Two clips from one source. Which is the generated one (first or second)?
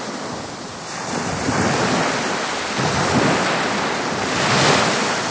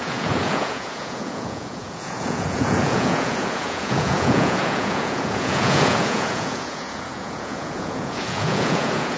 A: second